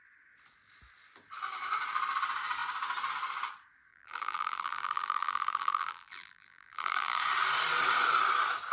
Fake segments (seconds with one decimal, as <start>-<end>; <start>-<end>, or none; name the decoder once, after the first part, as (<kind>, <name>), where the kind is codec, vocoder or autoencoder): 3.9-7.2 (vocoder, BigVGAN v2)